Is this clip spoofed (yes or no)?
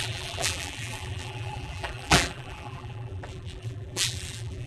yes